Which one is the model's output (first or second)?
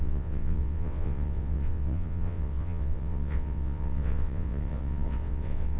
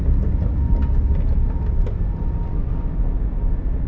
first